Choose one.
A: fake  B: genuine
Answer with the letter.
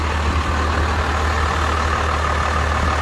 B